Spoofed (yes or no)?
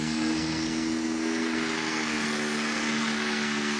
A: yes